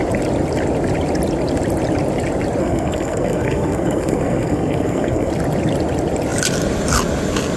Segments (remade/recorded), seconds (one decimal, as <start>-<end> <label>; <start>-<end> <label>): 0.0-2.6 recorded; 2.6-5.3 remade; 5.3-7.6 recorded